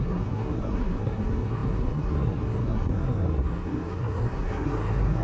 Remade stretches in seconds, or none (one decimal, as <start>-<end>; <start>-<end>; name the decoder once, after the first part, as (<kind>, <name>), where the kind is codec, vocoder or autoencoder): 0.0-5.2 (codec, SNAC)